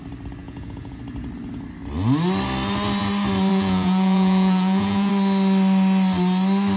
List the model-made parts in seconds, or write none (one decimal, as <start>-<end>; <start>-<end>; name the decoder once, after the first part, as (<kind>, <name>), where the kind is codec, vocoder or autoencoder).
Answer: 0.4-1.0 (vocoder, Vocos); 3.5-5.1